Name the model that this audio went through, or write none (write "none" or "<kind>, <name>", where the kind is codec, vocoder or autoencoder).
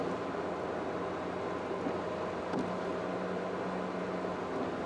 none